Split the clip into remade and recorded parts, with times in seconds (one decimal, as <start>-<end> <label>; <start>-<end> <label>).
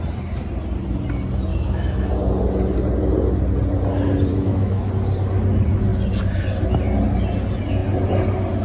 0.0-1.5 recorded; 1.5-2.1 remade; 2.1-4.3 recorded; 4.3-4.9 remade; 4.9-8.6 recorded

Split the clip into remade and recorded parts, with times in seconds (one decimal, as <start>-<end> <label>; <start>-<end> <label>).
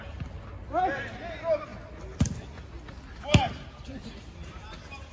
0.0-5.1 recorded